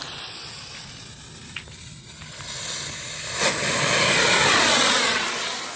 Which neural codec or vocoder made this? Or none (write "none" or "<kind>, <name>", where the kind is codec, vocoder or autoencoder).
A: none